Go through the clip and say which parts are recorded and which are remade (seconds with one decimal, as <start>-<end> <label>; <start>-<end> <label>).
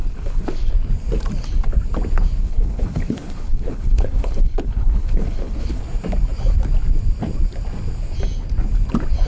0.0-0.7 remade; 0.7-2.4 recorded; 2.4-5.8 remade; 5.8-9.3 recorded